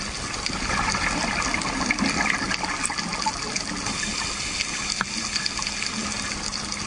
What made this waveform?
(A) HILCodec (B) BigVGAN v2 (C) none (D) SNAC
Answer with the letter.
C